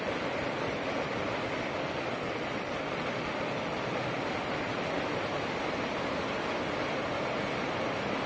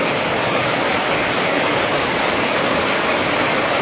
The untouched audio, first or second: first